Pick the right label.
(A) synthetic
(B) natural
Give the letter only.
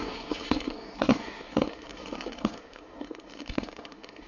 A